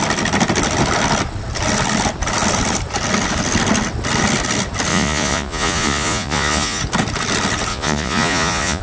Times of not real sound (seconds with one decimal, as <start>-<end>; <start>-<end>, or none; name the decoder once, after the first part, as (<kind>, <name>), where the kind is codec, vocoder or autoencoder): 4.9-6.8 (vocoder, Vocos); 7.7-8.8